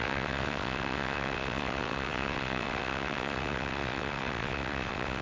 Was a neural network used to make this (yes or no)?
yes